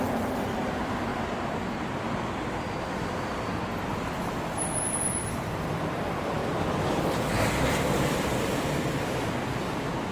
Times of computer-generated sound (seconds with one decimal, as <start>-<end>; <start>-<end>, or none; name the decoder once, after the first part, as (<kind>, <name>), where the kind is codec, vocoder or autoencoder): 0.0-1.1 (vocoder, BigVGAN v2); 4.6-10.1